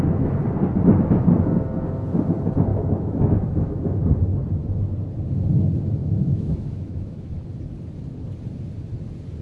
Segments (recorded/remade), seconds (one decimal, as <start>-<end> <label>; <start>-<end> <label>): 0.0-2.7 recorded; 2.7-4.0 remade; 4.0-6.0 recorded; 6.0-7.3 remade; 7.3-9.4 recorded